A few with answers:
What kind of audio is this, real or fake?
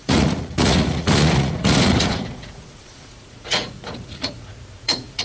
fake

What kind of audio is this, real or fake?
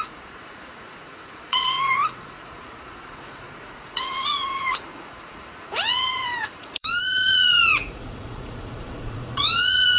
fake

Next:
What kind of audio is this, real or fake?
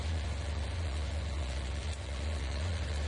fake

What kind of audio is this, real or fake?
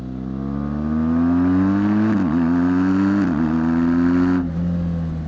real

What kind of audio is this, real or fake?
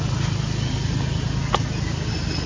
real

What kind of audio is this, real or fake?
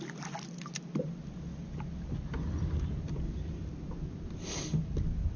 real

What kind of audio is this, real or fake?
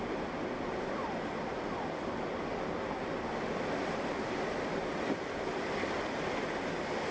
real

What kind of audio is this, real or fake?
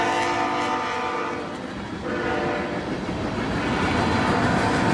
real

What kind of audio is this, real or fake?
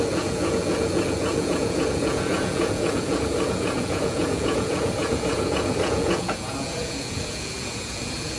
fake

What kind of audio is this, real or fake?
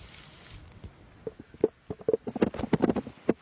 real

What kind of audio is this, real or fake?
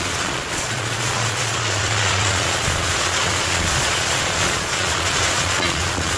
fake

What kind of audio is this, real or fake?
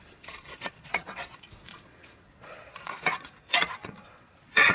fake